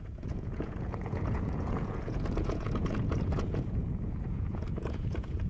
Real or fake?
fake